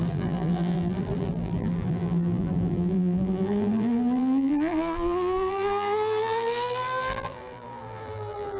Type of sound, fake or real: fake